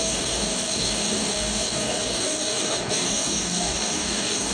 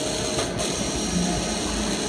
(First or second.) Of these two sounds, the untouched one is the second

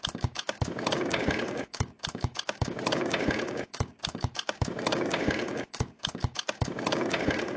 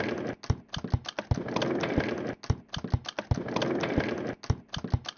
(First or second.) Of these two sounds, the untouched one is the second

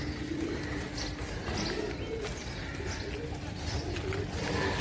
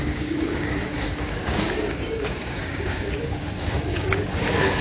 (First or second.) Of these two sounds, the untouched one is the first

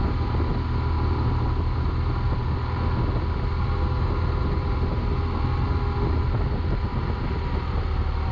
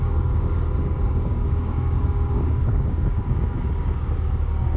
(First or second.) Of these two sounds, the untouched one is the first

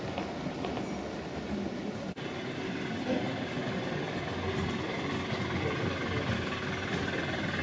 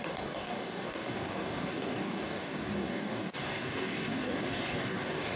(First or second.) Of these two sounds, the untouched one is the first